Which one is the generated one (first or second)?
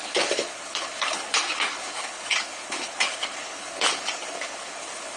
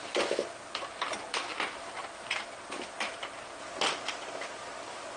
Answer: first